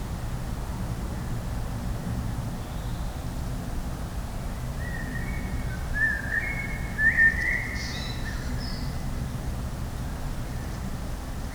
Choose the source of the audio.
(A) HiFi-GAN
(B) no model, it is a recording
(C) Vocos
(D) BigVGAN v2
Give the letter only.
B